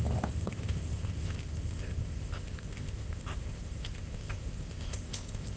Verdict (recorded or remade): remade